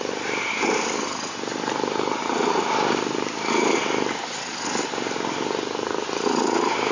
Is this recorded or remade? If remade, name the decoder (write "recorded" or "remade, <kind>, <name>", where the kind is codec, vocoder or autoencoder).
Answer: remade, vocoder, BigVGAN v2